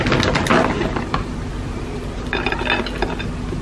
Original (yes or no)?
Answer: yes